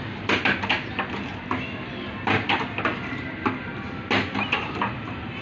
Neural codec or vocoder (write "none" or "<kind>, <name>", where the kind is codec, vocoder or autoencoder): none